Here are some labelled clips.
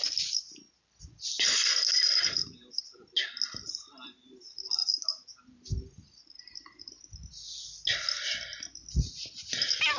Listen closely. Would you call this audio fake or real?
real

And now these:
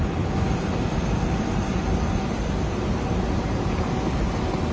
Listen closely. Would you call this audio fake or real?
real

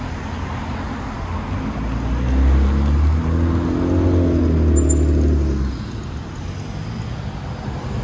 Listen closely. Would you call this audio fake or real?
real